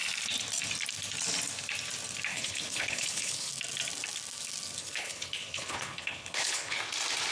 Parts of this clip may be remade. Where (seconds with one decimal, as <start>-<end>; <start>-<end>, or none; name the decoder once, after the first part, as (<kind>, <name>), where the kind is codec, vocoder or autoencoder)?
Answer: 2.3-3.5 (codec, HILCodec); 4.8-6.8